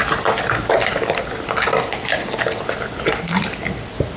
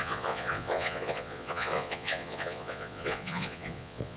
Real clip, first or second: first